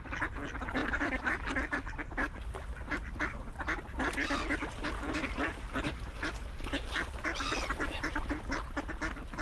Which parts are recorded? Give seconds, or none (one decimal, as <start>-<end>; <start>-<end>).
0.0-9.4